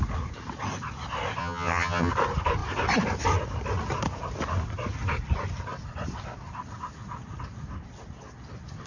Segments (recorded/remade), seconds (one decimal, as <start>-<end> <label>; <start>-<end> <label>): 0.0-1.4 recorded; 1.4-2.1 remade; 2.1-8.9 recorded